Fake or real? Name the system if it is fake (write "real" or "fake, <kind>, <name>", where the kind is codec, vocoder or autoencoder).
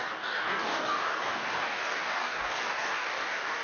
fake, codec, DAC